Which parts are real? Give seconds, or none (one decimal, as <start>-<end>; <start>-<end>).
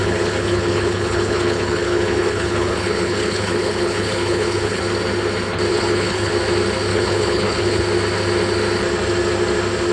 4.8-5.7; 6.3-6.9; 7.8-9.9